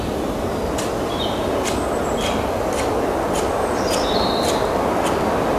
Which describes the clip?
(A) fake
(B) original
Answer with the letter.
B